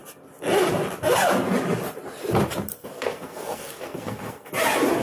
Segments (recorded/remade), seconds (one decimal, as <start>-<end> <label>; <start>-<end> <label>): 0.0-2.8 recorded; 2.8-4.5 remade; 4.5-5.0 recorded